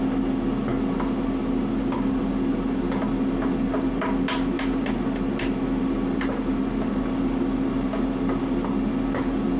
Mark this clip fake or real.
real